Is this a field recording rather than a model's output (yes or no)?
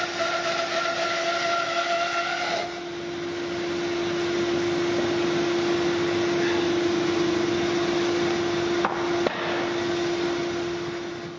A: yes